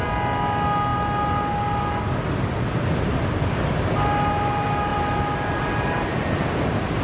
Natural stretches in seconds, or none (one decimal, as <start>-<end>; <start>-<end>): 0.0-7.0